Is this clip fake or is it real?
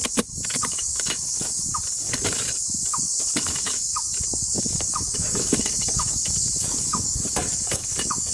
fake